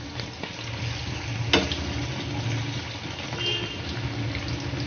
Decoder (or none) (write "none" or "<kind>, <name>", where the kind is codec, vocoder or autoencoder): none